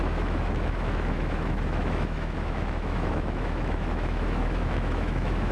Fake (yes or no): yes